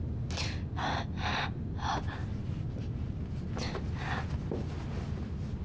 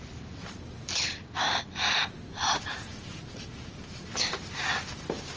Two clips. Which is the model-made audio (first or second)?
second